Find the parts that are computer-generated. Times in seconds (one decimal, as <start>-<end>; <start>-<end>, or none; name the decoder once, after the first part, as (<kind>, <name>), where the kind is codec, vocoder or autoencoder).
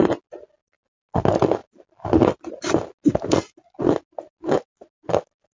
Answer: none